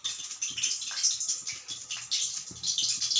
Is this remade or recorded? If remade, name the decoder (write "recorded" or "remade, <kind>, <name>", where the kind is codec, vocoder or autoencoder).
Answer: recorded